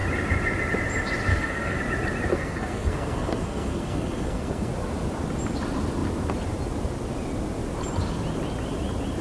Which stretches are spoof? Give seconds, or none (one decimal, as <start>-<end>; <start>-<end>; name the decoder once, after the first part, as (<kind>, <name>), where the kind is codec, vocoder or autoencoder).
1.3-1.8 (codec, SNAC); 2.3-4.7